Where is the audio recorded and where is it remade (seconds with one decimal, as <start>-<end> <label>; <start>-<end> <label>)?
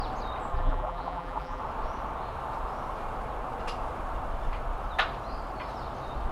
0.0-0.5 recorded; 0.5-1.6 remade; 1.6-6.3 recorded